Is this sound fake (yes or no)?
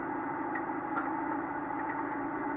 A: no